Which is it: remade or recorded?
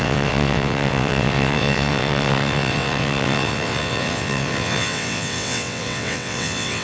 remade